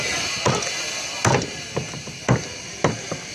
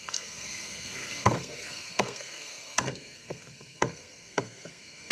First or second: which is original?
first